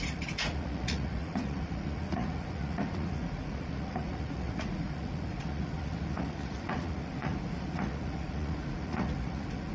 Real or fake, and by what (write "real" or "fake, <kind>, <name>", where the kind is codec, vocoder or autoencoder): fake, vocoder, Vocos